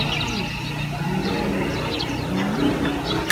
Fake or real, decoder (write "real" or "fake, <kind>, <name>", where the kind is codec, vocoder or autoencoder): real